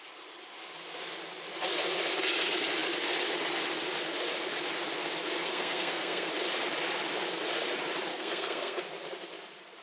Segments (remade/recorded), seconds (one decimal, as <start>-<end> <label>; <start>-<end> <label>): 0.0-5.4 recorded; 5.4-6.3 remade; 6.3-8.1 recorded; 8.1-8.8 remade; 8.8-9.8 recorded

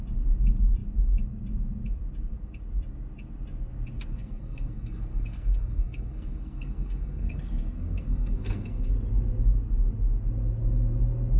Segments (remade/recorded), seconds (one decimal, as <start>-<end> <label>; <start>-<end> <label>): 0.0-4.1 recorded; 4.1-8.9 remade; 8.9-11.4 recorded